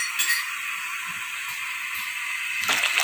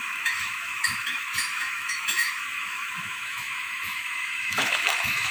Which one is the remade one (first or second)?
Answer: second